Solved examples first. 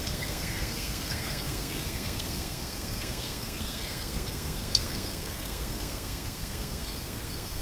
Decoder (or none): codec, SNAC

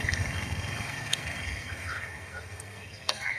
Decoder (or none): codec, SNAC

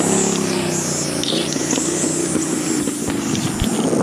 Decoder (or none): none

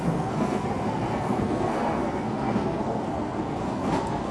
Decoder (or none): codec, SNAC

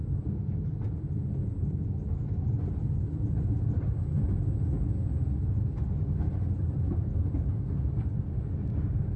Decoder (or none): none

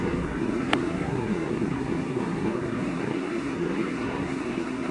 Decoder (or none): codec, SNAC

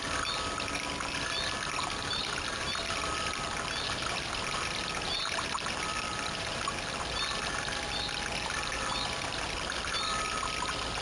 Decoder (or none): none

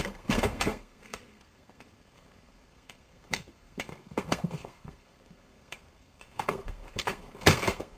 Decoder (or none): codec, SNAC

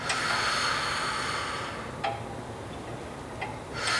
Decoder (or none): none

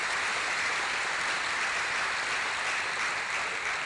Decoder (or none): none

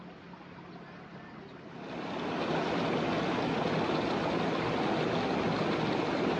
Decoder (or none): none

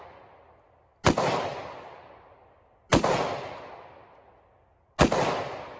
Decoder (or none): none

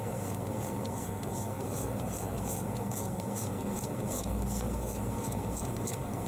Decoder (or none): codec, SNAC